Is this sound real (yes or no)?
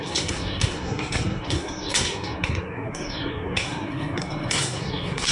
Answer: no